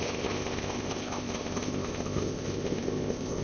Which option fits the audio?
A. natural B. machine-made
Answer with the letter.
B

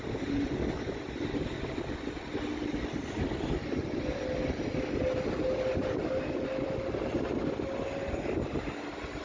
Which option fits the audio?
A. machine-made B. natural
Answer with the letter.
B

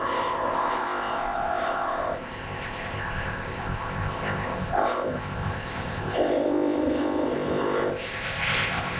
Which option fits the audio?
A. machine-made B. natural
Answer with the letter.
A